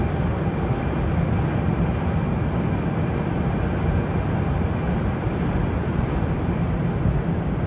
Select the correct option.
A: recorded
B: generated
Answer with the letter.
A